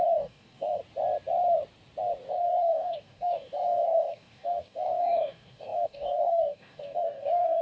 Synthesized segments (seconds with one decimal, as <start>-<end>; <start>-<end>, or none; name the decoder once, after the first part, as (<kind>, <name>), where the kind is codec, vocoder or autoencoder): 0.0-0.8 (codec, DAC); 2.3-7.6